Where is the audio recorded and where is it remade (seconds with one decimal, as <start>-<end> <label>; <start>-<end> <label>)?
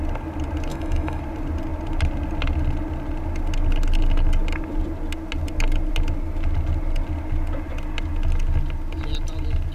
0.0-0.7 recorded; 0.7-1.2 remade; 1.2-9.7 recorded